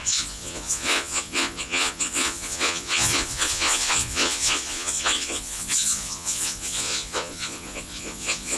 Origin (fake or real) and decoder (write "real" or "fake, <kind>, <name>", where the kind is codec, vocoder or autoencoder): fake, vocoder, Vocos